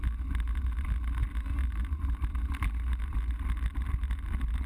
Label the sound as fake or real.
real